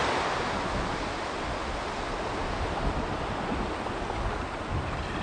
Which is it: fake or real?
real